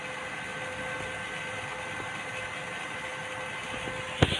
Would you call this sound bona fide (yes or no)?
yes